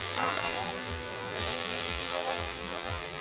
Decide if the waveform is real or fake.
fake